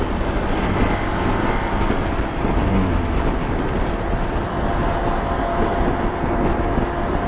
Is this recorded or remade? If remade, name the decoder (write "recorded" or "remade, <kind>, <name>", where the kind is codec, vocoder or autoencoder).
recorded